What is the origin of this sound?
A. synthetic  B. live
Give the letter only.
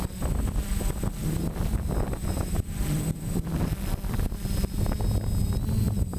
B